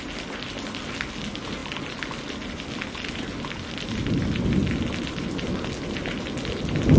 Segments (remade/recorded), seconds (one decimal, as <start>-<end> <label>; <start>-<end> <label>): 0.0-7.0 recorded